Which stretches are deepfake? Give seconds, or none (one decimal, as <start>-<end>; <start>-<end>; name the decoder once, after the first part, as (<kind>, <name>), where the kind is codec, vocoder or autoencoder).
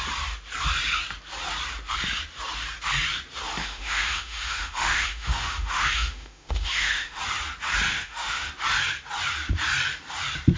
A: 3.6-7.2 (autoencoder, DAC-VAE); 7.9-8.5